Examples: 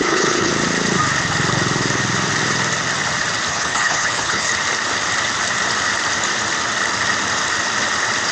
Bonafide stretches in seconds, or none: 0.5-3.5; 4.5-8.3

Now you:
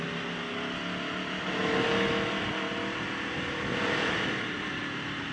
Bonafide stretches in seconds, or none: 0.0-5.3